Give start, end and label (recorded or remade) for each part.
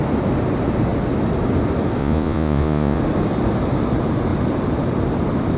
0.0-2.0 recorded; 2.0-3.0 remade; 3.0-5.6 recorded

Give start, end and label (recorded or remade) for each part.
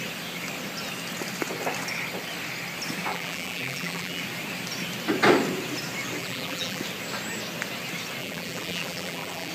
0.0-3.1 recorded; 3.1-4.2 remade; 4.2-6.2 recorded; 6.2-6.8 remade; 6.8-8.2 recorded; 8.2-9.5 remade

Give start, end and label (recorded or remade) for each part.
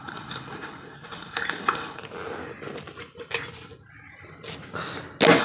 0.0-2.0 remade; 2.0-5.4 recorded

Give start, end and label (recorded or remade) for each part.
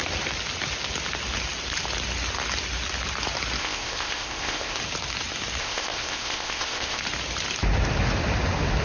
0.0-3.6 recorded; 3.6-4.8 remade; 4.8-5.6 recorded; 5.6-7.0 remade; 7.0-8.8 recorded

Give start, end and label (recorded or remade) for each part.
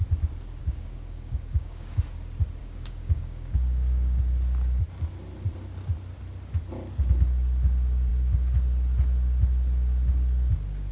0.0-0.6 recorded; 0.6-2.0 remade; 2.0-2.6 recorded; 2.6-4.2 remade; 4.2-10.9 recorded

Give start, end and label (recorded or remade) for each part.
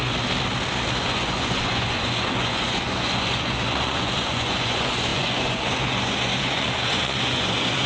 0.0-1.0 recorded; 1.0-7.9 remade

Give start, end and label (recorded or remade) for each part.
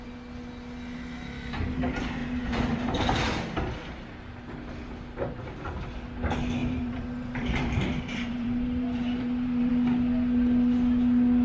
0.0-2.2 recorded; 2.2-3.0 remade; 3.0-6.6 recorded; 6.6-9.7 remade; 9.7-11.4 recorded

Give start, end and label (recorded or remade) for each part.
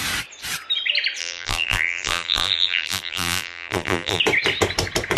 0.0-1.2 recorded; 1.2-4.2 remade; 4.2-5.2 recorded